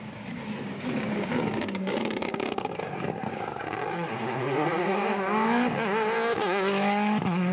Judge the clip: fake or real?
fake